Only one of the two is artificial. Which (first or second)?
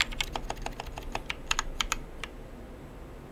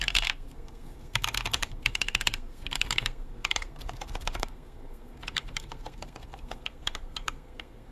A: second